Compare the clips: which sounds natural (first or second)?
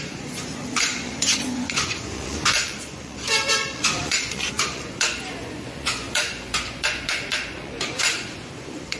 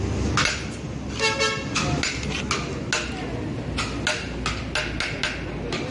second